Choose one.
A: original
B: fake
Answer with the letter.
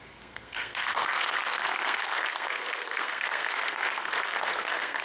B